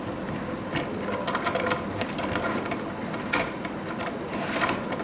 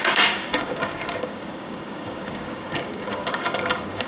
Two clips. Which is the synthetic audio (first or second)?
second